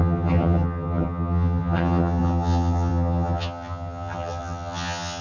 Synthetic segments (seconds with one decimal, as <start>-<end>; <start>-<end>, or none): 0.0-5.2